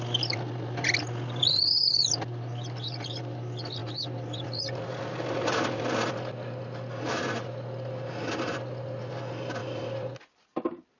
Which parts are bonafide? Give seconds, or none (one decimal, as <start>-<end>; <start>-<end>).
0.0-11.0